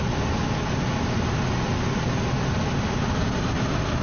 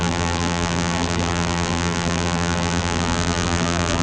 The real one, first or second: first